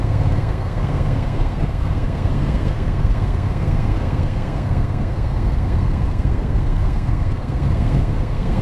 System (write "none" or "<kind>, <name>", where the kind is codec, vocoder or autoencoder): codec, SNAC